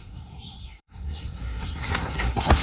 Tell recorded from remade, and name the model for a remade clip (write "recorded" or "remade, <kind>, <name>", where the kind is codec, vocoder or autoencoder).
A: remade, codec, SNAC